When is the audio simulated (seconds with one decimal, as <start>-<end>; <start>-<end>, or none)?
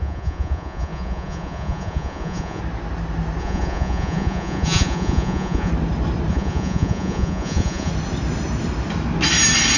0.0-2.6; 3.4-5.7; 6.3-7.9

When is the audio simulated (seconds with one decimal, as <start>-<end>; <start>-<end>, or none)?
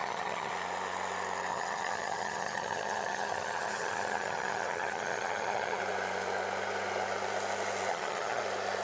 0.0-0.5; 1.5-5.8; 7.9-8.4